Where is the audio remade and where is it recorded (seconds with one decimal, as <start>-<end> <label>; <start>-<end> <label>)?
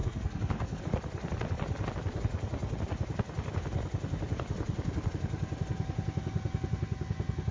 0.0-0.8 remade; 0.8-7.5 recorded